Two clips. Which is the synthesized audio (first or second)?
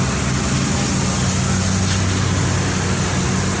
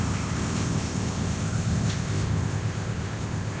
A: second